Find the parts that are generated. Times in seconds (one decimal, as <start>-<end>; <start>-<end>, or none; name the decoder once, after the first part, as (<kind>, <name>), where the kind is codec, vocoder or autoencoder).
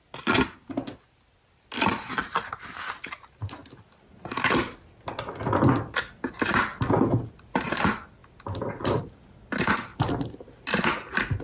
none